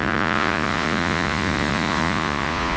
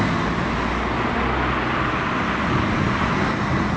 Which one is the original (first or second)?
second